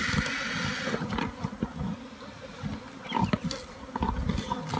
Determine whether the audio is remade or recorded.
recorded